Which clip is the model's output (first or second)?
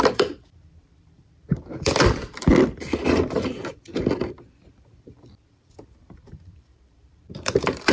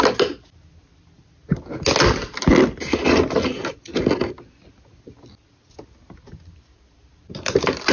first